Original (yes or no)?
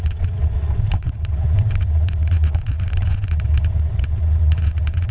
no